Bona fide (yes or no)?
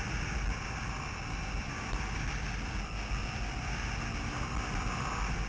yes